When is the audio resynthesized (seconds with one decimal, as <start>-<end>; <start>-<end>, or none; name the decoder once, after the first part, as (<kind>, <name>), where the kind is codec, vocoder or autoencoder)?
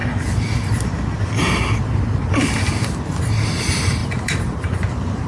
none